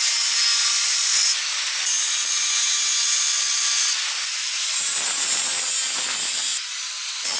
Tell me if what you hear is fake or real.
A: real